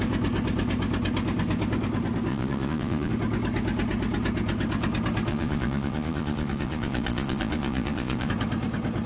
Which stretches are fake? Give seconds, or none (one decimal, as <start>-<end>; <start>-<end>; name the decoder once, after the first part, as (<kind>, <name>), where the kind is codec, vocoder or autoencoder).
2.3-3.1 (vocoder, Vocos); 5.3-8.3